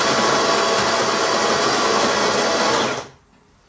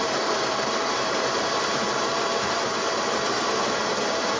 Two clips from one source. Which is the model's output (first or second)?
second